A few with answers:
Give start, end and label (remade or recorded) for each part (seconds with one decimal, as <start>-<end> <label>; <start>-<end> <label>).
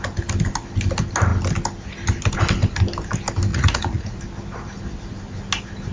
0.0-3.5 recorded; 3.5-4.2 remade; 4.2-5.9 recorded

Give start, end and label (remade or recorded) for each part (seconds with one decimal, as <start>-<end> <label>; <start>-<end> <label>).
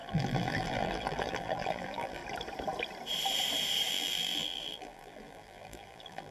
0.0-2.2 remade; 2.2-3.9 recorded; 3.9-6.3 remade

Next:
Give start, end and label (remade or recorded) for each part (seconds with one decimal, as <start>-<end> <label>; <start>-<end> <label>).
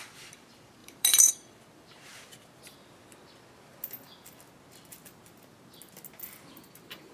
0.0-0.8 recorded; 0.8-1.3 remade; 1.3-7.1 recorded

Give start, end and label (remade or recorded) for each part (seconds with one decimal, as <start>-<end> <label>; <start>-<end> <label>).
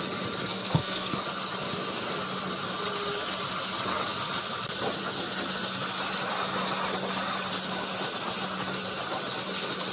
0.0-0.5 recorded; 0.5-1.2 remade; 1.2-9.9 recorded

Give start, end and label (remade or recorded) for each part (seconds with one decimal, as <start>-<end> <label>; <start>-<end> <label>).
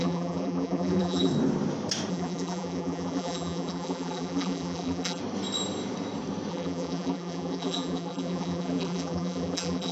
0.0-1.3 remade; 1.3-2.1 recorded; 2.1-5.2 remade; 5.2-6.5 recorded; 6.5-9.9 remade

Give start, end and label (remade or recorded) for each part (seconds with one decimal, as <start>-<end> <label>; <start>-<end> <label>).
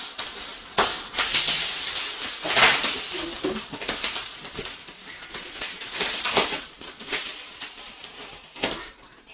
0.0-5.3 recorded; 5.3-6.0 remade; 6.0-6.4 recorded; 6.4-7.8 remade; 7.8-9.3 recorded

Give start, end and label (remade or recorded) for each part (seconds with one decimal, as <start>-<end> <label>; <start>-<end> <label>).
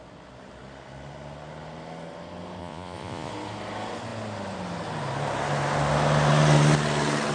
0.0-2.6 recorded; 2.6-3.3 remade; 3.3-7.3 recorded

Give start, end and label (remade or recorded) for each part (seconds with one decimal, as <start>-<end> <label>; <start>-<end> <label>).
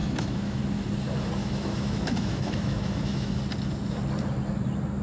0.0-0.6 remade; 0.6-1.4 recorded; 1.4-3.4 remade; 3.4-5.0 recorded